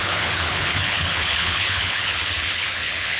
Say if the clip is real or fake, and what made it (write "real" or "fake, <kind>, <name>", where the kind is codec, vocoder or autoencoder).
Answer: fake, codec, HILCodec